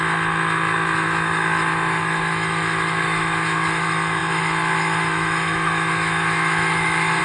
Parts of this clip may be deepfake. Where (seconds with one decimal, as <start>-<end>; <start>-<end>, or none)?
0.0-7.2